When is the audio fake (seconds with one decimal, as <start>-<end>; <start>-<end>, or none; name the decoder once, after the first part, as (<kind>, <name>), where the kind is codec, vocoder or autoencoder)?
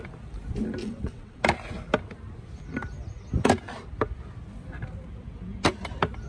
0.8-1.4 (vocoder, WaveNeXt)